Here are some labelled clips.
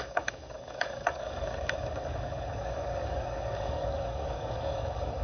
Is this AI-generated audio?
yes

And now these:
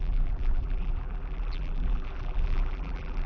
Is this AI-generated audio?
yes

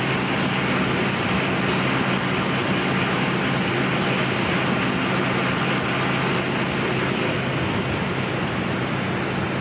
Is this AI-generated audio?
no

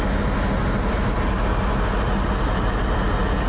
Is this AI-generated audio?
no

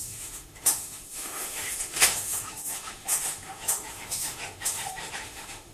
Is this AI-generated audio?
yes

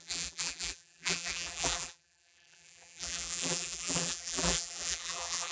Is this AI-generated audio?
yes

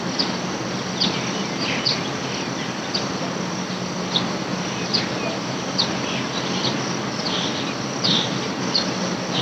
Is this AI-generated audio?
no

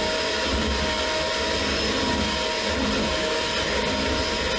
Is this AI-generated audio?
no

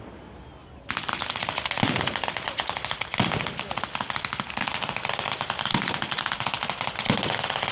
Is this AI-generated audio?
no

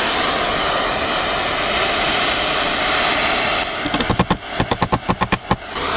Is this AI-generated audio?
no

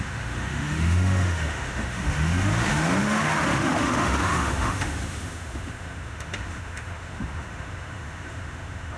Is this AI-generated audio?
yes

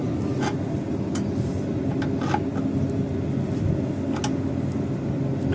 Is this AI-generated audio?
no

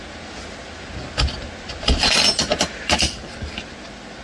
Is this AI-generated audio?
no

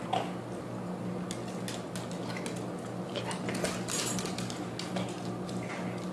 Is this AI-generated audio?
no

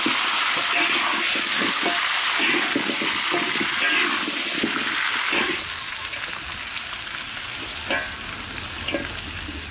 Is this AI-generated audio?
no